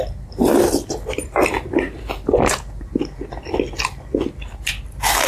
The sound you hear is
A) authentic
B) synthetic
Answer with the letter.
A